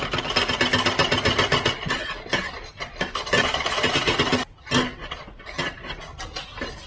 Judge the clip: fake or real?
real